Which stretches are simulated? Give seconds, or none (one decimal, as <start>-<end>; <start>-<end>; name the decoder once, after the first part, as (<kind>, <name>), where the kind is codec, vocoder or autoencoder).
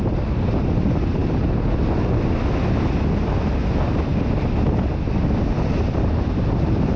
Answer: none